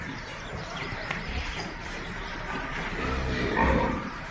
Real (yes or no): no